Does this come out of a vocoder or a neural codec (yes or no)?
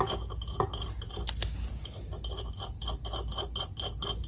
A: no